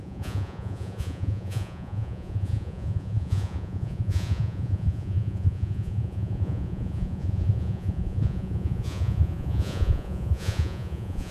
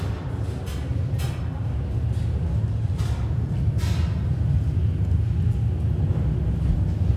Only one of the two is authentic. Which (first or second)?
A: second